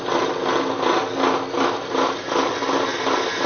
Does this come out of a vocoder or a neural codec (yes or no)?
no